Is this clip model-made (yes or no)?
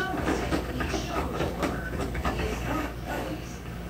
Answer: yes